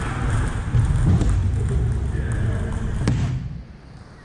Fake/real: real